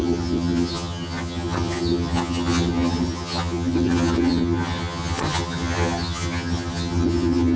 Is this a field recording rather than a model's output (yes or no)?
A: no